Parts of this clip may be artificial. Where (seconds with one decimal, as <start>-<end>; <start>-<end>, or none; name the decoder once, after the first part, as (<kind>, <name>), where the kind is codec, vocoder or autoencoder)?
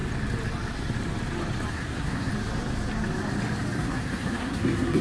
1.7-2.3 (codec, SNAC); 3.8-5.0